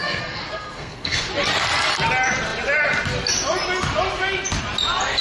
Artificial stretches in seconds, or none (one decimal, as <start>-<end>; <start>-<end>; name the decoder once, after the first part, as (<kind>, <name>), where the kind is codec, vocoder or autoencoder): 0.0-1.3 (codec, SNAC)